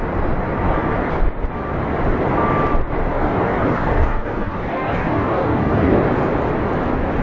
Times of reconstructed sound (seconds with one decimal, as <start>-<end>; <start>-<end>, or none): 3.1-6.0